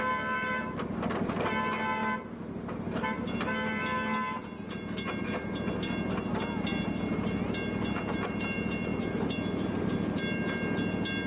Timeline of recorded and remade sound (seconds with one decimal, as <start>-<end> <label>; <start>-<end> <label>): 0.0-11.3 recorded